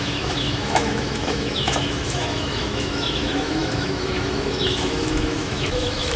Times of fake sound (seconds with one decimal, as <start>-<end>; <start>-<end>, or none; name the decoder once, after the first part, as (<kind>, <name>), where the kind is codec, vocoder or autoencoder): 0.0-6.2 (autoencoder, DAC-VAE)